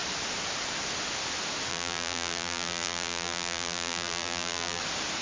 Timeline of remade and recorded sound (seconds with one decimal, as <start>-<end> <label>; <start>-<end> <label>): 0.0-1.7 recorded; 1.7-4.8 remade; 4.8-5.2 recorded